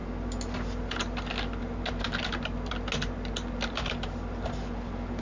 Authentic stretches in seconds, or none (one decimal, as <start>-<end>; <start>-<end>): 0.0-5.2